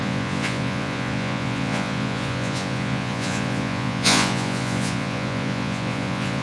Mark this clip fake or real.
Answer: fake